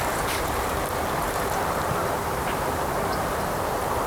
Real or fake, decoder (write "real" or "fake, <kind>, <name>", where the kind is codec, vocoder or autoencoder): fake, vocoder, BigVGAN v2